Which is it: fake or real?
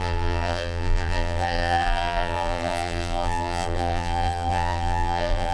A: fake